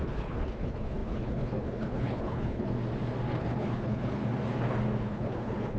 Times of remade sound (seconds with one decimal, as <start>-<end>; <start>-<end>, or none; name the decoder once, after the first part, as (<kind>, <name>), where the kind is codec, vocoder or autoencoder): 0.0-2.7 (codec, HILCodec); 3.4-4.2; 5.0-5.8